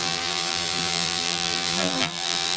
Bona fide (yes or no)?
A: no